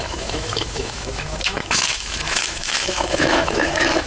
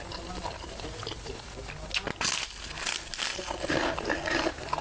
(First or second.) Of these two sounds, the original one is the second